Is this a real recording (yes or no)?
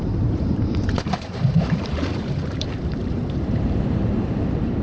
no